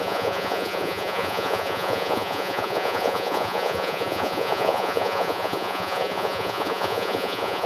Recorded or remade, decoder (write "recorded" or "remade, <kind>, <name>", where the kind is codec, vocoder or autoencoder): remade, vocoder, Vocos